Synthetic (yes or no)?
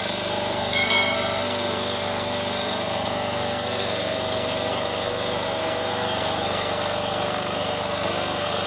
yes